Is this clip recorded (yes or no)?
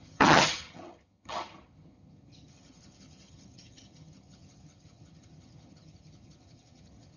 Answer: no